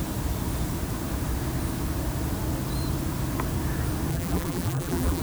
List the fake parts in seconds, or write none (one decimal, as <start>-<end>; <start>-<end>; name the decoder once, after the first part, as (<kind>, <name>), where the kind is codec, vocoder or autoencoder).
4.1-5.2 (vocoder, BigVGAN v2)

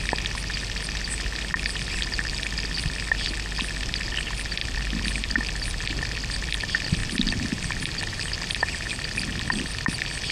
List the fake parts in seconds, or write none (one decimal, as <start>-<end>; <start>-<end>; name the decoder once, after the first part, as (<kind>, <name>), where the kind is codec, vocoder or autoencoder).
4.6-6.6 (vocoder, BigVGAN v2); 7.0-9.7